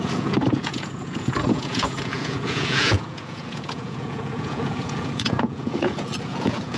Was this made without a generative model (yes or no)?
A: no